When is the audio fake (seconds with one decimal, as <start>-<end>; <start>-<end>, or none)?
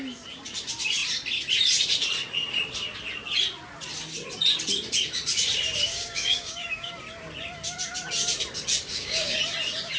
5.9-6.9; 8.9-9.4